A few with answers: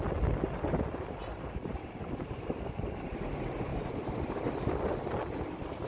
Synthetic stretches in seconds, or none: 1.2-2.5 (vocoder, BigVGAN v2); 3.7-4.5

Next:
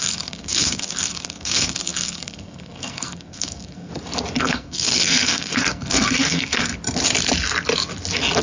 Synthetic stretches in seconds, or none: 0.0-3.9 (codec, SNAC); 4.4-6.7

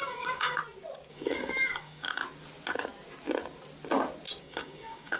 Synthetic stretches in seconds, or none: 0.0-0.6 (codec, DAC); 1.1-2.2; 4.4-5.2

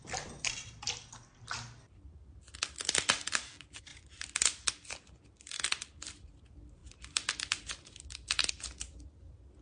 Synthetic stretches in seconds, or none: none

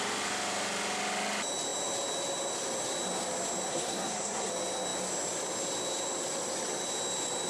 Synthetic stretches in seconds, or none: 3.7-4.5 (codec, SNAC)

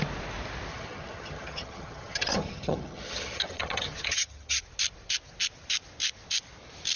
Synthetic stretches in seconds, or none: 0.7-4.6 (vocoder, HiFi-GAN)

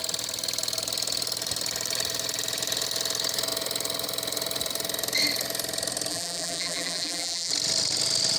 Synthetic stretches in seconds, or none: 6.1-7.5 (vocoder, BigVGAN v2)